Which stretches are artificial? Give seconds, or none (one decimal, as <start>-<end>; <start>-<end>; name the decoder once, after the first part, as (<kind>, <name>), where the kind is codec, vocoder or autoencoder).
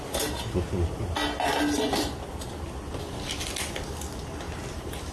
none